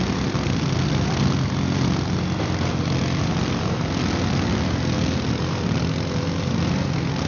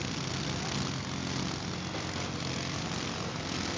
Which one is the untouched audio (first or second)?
second